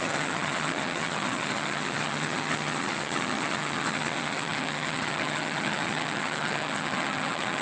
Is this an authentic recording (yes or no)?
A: no